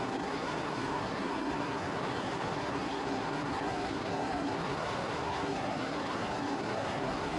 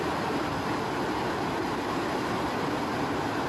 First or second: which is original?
second